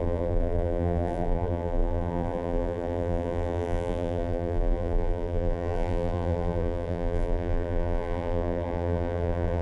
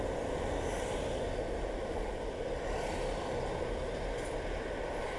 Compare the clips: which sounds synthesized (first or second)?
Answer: first